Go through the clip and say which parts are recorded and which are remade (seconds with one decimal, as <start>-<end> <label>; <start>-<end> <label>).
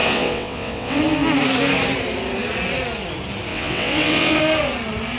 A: 0.0-1.0 remade; 1.0-3.5 recorded; 3.5-4.4 remade; 4.4-5.2 recorded